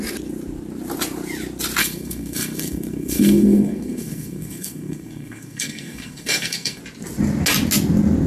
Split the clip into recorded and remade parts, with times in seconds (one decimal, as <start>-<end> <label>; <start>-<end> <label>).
0.0-1.8 recorded; 1.8-6.8 remade; 6.8-8.3 recorded